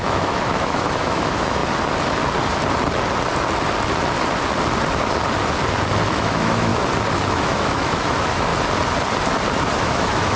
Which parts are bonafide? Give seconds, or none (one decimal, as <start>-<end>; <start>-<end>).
1.6-6.1; 6.7-7.3; 8.5-9.8